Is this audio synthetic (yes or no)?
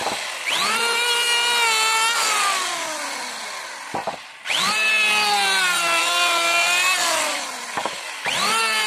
no